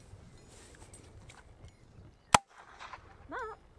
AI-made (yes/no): no